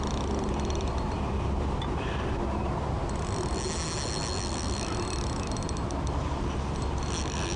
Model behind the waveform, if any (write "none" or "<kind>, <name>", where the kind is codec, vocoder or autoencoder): none